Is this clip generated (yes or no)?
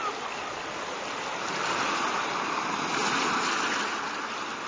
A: no